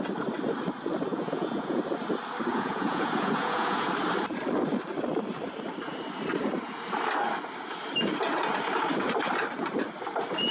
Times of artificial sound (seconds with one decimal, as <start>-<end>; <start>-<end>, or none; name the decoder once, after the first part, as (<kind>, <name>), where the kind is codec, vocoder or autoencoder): 1.1-1.8 (vocoder, Vocos); 2.5-3.9